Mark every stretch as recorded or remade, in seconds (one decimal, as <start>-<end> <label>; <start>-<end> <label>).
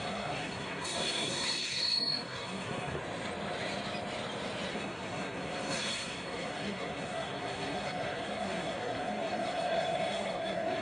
0.0-3.0 remade; 3.0-4.7 recorded; 4.7-10.8 remade